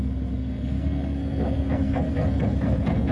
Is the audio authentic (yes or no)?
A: no